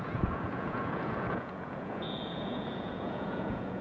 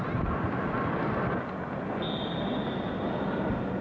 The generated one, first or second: first